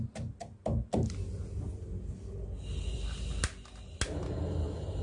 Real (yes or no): yes